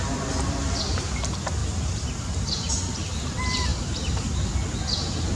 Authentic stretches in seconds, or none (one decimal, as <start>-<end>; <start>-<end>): 0.0-5.4